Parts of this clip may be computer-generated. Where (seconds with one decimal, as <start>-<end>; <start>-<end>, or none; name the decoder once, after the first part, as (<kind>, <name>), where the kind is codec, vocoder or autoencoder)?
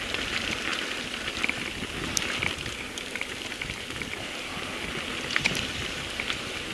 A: none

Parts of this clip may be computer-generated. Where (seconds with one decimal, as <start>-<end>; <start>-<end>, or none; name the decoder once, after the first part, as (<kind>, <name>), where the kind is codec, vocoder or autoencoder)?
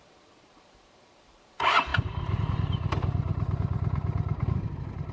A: 0.0-5.1 (vocoder, BigVGAN v2)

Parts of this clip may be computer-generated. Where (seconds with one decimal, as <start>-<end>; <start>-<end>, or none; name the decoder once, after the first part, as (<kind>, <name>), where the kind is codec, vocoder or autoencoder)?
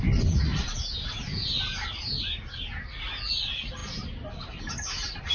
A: 0.5-3.1 (vocoder, BigVGAN v2)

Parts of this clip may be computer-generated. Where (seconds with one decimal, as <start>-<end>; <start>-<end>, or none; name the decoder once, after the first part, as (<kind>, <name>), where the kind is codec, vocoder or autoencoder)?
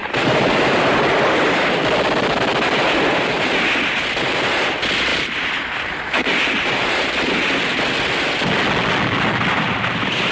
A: 0.0-1.0 (vocoder, BigVGAN v2); 5.1-7.1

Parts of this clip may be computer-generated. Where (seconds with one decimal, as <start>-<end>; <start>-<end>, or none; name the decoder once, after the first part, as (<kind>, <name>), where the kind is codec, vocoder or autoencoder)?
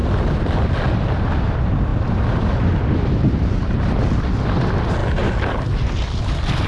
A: none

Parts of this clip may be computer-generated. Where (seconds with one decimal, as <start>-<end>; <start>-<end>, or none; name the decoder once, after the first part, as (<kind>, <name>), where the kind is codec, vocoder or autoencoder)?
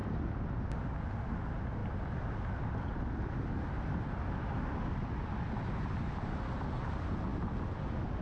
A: none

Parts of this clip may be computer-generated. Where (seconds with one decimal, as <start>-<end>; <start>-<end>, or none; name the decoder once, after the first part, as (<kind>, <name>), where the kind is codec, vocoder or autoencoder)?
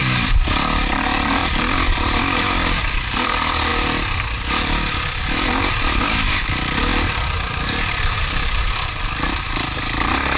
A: 0.0-10.4 (vocoder, BigVGAN v2)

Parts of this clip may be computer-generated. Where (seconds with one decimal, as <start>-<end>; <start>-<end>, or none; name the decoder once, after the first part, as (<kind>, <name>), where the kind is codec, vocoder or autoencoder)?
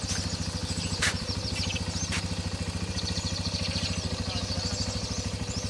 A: 0.6-1.8 (vocoder, BigVGAN v2)